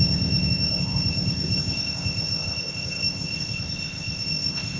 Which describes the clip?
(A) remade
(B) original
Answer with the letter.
A